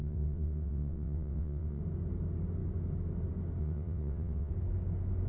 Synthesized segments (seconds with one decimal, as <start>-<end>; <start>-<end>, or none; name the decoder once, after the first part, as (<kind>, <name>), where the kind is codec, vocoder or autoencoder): 0.0-1.8 (vocoder, WaveNeXt); 3.6-4.5

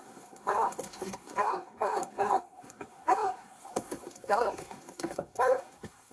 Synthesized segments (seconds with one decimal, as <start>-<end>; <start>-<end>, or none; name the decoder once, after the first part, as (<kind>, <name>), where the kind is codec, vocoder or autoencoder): 0.0-6.1 (codec, SNAC)

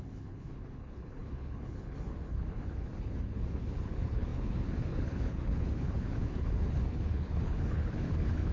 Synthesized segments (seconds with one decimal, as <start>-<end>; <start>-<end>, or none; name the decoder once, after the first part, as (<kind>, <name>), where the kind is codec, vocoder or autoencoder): 0.0-8.5 (codec, HILCodec)

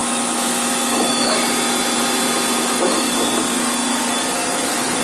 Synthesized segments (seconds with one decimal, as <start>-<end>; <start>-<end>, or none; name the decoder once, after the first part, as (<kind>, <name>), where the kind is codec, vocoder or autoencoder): 0.0-1.3 (autoencoder, DAC-VAE); 2.6-3.2; 4.4-5.0

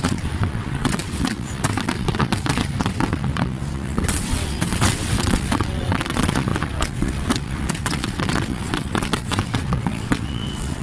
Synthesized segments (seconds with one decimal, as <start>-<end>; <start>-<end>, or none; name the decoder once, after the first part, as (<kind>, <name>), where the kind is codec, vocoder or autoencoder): 0.0-10.8 (vocoder, WaveNeXt)